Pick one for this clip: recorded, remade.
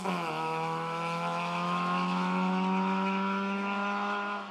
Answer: remade